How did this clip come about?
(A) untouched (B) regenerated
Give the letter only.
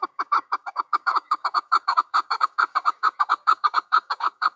B